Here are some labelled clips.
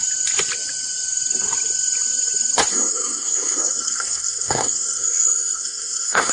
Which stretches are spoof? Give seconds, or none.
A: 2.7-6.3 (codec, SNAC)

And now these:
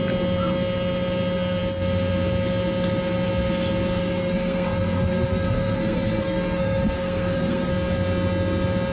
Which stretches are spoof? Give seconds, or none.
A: 4.0-7.7 (codec, SNAC)

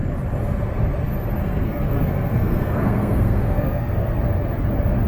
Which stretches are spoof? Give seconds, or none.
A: 1.4-4.2 (codec, SNAC)